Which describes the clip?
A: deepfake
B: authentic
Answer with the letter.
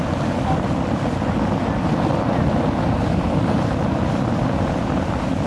B